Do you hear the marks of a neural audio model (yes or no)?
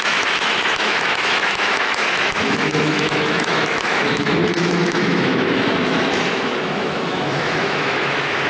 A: yes